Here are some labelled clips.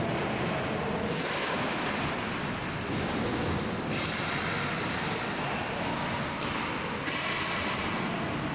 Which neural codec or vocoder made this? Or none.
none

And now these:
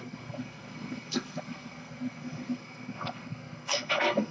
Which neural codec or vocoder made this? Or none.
codec, SNAC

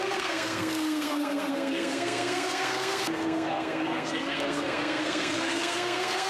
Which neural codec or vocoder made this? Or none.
codec, SNAC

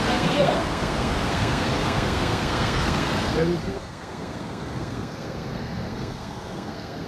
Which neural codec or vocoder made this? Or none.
codec, SNAC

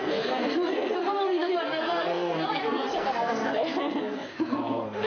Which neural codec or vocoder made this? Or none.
codec, SNAC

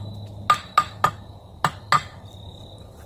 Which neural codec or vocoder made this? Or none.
none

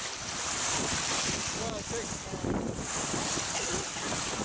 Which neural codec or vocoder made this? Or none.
none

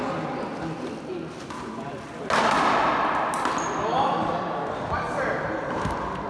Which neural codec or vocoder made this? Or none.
none